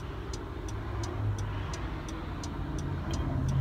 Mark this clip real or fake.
real